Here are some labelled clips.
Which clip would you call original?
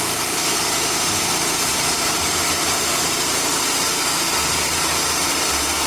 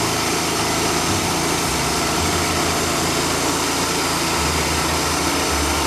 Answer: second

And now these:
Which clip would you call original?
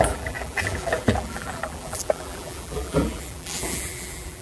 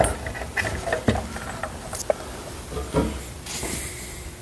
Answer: second